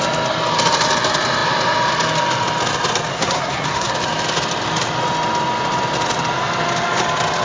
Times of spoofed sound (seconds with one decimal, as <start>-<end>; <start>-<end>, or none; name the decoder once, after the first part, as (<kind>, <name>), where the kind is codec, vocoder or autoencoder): 3.1-3.9 (codec, SNAC)